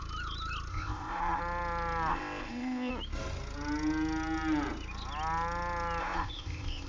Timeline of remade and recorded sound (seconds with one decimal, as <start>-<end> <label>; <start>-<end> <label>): 0.0-0.7 recorded; 0.7-1.4 remade; 1.4-2.1 recorded; 2.1-2.9 remade; 2.9-6.0 recorded; 6.0-6.9 remade